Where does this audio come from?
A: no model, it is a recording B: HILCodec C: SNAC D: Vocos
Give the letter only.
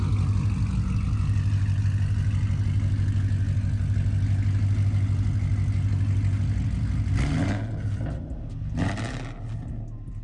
A